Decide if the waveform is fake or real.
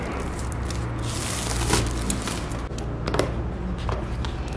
real